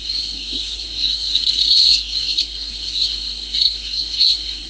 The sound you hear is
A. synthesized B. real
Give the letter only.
A